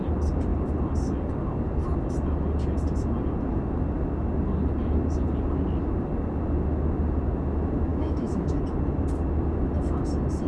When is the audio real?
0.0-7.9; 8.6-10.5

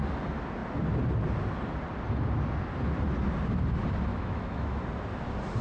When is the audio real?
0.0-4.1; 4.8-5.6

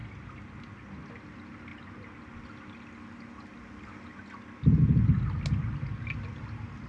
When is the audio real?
0.0-6.9

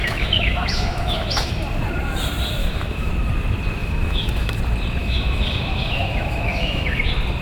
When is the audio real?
1.5-2.6; 3.1-3.8; 4.6-5.0; 7.0-7.4

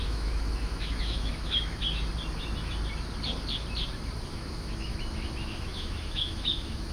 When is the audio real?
1.8-4.3